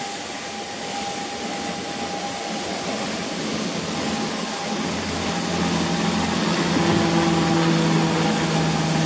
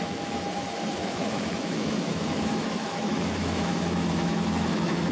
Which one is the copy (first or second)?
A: second